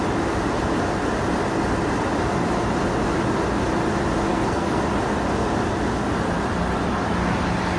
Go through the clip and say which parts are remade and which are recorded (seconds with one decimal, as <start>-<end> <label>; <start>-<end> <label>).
0.0-4.3 recorded; 4.3-4.8 remade; 4.8-7.8 recorded